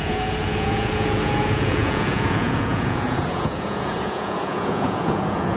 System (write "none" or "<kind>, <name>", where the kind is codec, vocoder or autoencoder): vocoder, Vocos